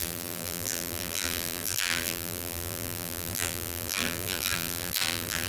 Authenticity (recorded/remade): remade